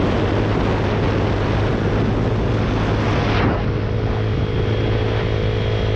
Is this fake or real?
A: real